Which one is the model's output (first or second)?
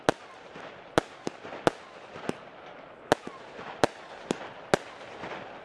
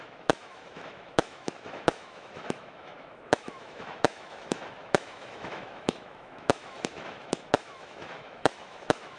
second